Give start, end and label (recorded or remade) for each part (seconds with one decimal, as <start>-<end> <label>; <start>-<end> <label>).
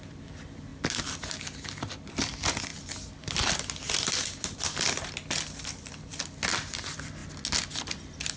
0.0-2.7 remade; 2.7-5.4 recorded; 5.4-7.2 remade; 7.2-7.9 recorded; 7.9-8.4 remade